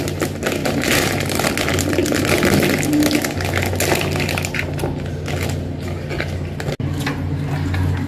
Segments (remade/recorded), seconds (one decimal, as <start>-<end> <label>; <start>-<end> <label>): 0.0-0.6 recorded; 0.6-1.2 remade; 1.2-8.1 recorded